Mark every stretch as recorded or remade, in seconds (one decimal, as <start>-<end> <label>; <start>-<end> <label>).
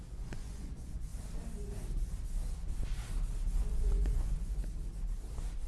0.0-1.1 remade; 1.1-3.6 recorded; 3.6-4.6 remade; 4.6-5.7 recorded